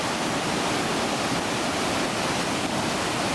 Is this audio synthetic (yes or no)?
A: no